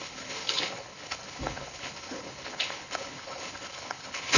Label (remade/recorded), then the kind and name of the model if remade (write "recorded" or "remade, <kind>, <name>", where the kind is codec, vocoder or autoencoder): remade, codec, HILCodec